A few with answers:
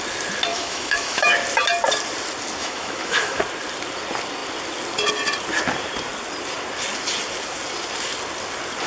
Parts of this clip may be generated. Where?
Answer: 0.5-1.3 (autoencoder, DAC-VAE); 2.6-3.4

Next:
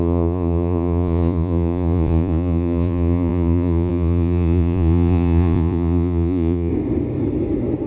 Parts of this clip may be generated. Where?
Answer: 0.0-6.7 (vocoder, Vocos)

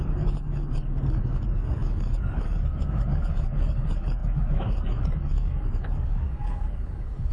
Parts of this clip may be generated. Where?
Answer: 0.0-7.3 (codec, DAC)

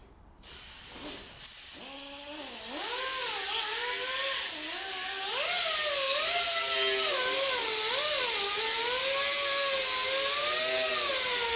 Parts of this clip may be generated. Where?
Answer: none

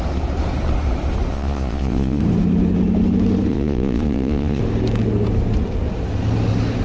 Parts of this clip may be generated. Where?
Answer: 1.3-2.2 (vocoder, Vocos); 3.5-4.6

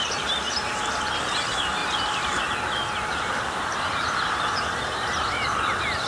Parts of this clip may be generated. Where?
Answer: none

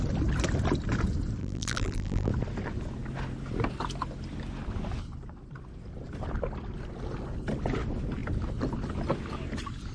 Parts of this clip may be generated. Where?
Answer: 1.4-2.3 (vocoder, BigVGAN v2)